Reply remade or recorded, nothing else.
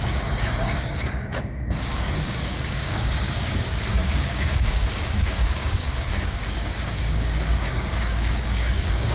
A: remade